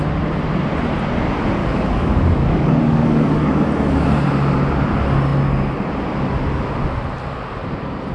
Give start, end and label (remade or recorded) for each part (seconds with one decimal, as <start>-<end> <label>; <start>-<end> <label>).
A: 0.0-1.6 recorded; 1.6-3.5 remade; 3.5-8.1 recorded